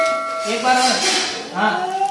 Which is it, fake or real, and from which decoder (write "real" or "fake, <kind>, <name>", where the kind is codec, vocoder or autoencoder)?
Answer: real